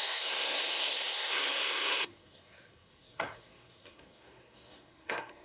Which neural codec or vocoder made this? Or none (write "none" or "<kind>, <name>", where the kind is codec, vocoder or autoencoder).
codec, SNAC